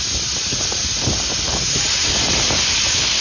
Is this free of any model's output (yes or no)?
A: yes